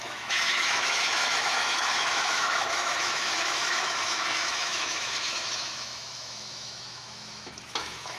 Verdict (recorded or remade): remade